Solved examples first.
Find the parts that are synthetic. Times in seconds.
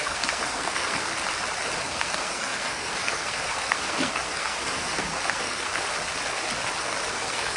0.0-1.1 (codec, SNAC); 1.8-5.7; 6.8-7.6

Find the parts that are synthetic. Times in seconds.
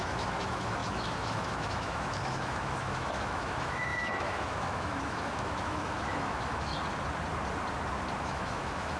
0.0-6.7 (autoencoder, DAC-VAE); 8.2-9.0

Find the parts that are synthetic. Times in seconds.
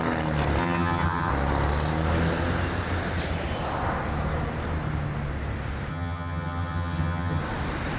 0.6-1.3 (vocoder, HiFi-GAN); 5.9-7.4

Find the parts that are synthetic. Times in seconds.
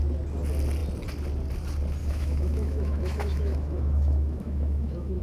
2.0-5.2 (autoencoder, DAC-VAE)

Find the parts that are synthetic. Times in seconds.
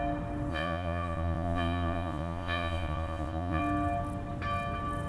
0.5-3.6 (vocoder, Vocos)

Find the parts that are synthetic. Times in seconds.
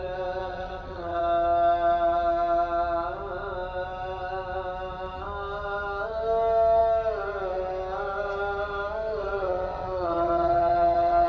0.4-1.2 (vocoder, WaveNeXt); 9.2-11.3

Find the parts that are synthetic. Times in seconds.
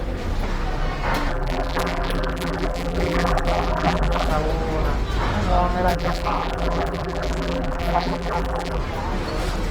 1.3-4.3 (vocoder, BigVGAN v2); 5.9-8.8